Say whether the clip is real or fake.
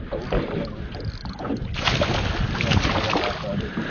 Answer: real